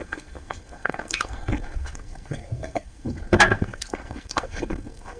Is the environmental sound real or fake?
fake